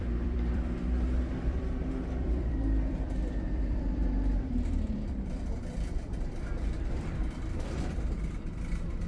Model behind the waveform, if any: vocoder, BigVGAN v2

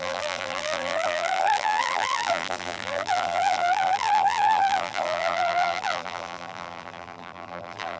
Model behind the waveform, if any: vocoder, BigVGAN v2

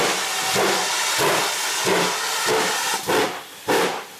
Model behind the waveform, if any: none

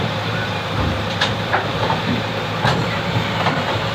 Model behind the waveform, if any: vocoder, BigVGAN v2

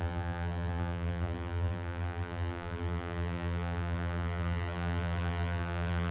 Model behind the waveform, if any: vocoder, BigVGAN v2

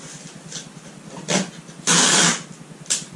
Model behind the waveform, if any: none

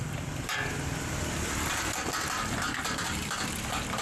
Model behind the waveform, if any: vocoder, BigVGAN v2